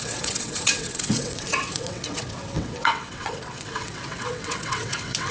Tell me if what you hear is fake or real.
fake